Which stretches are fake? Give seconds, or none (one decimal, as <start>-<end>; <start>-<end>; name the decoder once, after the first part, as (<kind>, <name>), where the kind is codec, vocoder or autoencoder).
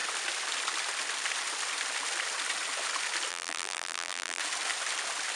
3.3-4.4 (vocoder, BigVGAN v2)